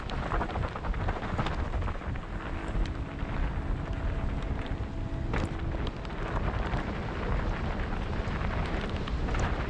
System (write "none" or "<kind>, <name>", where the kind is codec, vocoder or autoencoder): none